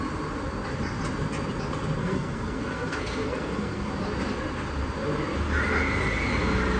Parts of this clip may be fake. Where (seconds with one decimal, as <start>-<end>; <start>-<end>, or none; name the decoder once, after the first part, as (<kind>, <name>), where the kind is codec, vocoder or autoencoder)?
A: 2.0-3.9 (codec, SNAC)

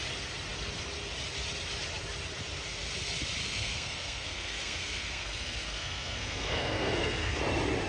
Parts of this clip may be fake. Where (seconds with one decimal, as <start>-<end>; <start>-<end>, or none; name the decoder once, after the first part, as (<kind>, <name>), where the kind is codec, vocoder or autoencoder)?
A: 3.4-7.4 (codec, SNAC)

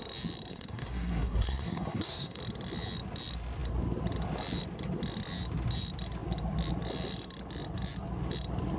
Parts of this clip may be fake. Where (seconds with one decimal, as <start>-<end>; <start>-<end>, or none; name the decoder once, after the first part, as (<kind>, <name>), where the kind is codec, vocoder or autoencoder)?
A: 0.5-2.4 (codec, SNAC)

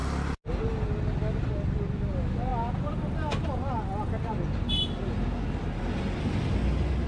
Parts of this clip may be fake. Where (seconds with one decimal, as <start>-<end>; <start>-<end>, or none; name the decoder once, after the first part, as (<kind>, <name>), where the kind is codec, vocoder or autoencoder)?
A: none

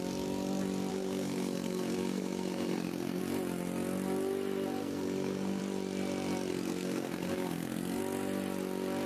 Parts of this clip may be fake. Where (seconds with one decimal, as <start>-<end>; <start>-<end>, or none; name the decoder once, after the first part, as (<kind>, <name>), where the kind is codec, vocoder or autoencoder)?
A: 0.9-3.2 (codec, SNAC); 4.8-5.6; 6.5-8.0

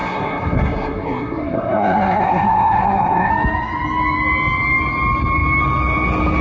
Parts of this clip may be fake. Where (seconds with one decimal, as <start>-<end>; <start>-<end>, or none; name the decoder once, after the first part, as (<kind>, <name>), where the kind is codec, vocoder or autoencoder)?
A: 0.0-3.3 (codec, SNAC)

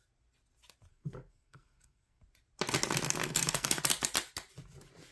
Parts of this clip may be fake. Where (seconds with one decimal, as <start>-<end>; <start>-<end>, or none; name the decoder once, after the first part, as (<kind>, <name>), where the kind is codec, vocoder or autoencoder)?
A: 0.9-2.2 (codec, SNAC); 3.2-3.8